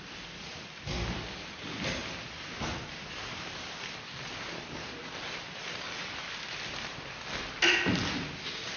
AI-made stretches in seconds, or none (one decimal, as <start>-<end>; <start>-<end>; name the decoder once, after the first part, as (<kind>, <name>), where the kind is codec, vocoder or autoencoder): 2.0-7.1 (vocoder, BigVGAN v2)